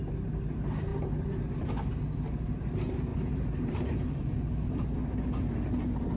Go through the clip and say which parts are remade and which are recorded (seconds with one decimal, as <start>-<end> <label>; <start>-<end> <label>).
0.0-0.9 recorded; 0.9-1.4 remade; 1.4-3.1 recorded; 3.1-4.3 remade; 4.3-6.2 recorded